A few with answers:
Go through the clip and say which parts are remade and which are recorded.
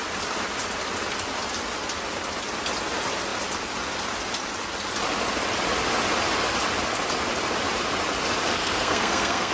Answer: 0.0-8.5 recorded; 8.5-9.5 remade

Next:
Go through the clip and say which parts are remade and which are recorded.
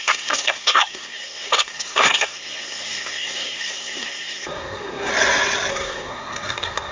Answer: 0.0-5.1 remade; 5.1-5.7 recorded; 5.7-6.9 remade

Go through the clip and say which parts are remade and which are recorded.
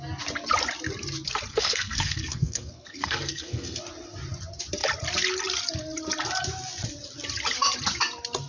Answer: 0.0-1.5 recorded; 1.5-3.8 remade; 3.8-8.5 recorded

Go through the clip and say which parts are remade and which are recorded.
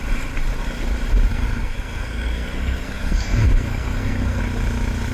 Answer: 0.0-1.3 recorded; 1.3-4.4 remade; 4.4-5.1 recorded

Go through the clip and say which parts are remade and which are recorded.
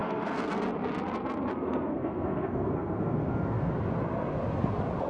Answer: 0.0-0.5 remade; 0.5-1.5 recorded; 1.5-3.7 remade; 3.7-5.1 recorded